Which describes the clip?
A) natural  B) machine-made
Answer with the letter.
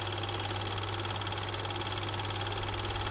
A